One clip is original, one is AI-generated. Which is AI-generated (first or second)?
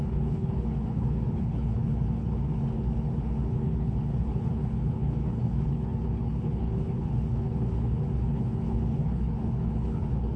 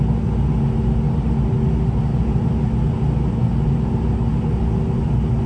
first